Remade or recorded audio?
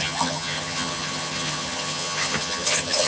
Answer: remade